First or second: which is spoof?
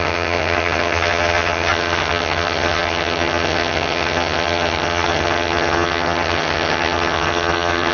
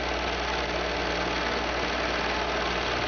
first